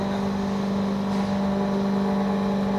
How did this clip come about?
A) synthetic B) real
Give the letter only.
B